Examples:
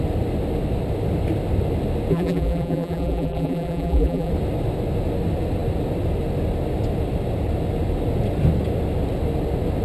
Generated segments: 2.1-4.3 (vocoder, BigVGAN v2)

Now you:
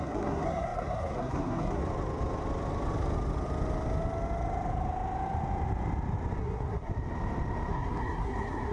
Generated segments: 0.0-1.8 (codec, SNAC); 6.4-6.9; 7.7-8.7

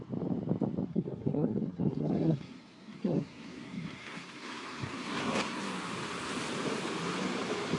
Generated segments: 0.9-5.6 (codec, SNAC)

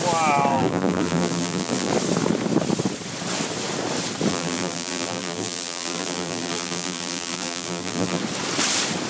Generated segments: 0.5-1.9 (vocoder, BigVGAN v2); 4.3-8.2

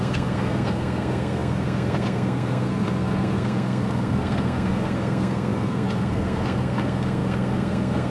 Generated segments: 0.0-8.1 (codec, SNAC)

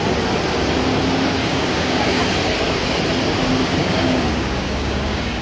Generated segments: 1.4-2.2 (codec, DAC); 3.8-5.4

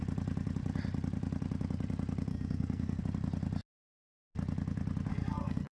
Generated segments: 2.3-3.0 (codec, SNAC); 5.1-5.8

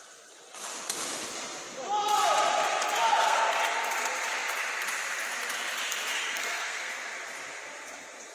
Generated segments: 3.1-3.6 (codec, SNAC); 6.1-6.9